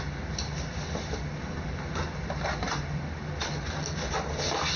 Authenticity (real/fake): real